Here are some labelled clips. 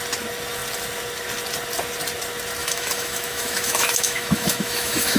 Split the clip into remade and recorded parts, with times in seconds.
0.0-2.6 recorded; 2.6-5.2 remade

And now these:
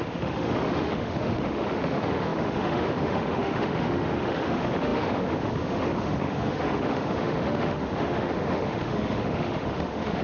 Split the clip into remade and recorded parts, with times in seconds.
0.0-10.2 remade

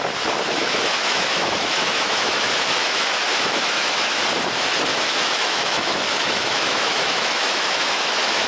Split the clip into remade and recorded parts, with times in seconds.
0.0-0.6 recorded; 0.6-4.2 remade; 4.2-4.9 recorded; 4.9-8.5 remade

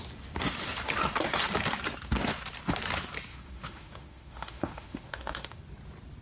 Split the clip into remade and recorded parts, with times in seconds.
0.0-3.3 recorded; 3.3-5.6 remade; 5.6-6.2 recorded